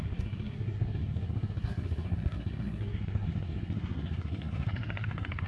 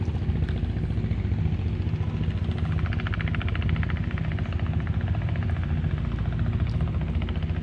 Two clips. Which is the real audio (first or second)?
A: second